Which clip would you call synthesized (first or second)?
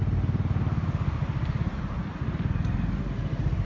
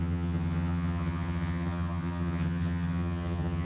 second